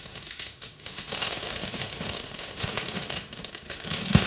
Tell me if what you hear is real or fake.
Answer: fake